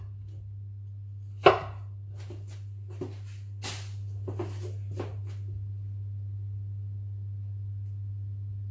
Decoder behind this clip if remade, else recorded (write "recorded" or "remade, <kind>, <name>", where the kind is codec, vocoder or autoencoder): recorded